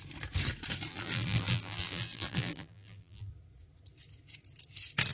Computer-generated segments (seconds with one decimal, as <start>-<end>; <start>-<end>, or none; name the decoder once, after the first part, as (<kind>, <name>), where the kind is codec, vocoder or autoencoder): 0.9-3.3 (vocoder, BigVGAN v2)